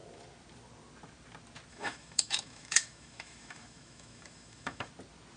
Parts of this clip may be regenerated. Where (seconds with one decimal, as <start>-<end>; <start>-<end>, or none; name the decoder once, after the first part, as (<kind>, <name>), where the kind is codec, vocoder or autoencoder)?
1.7-4.9 (autoencoder, DAC-VAE)